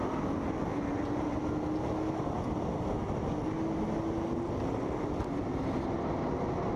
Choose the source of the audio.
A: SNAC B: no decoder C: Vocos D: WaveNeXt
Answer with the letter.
B